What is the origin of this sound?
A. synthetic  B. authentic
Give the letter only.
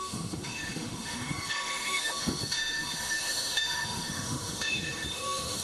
A